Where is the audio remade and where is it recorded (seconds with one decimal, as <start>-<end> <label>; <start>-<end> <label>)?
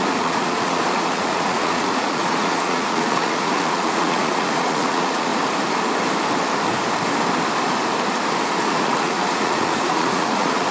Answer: 0.0-5.3 remade; 5.3-8.7 recorded; 8.7-10.7 remade